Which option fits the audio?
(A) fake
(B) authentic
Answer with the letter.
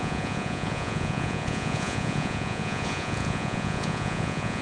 A